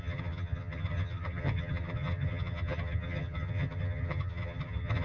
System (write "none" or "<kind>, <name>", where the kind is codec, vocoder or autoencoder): vocoder, HiFi-GAN